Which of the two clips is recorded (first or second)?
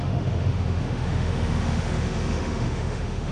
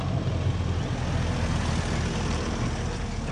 second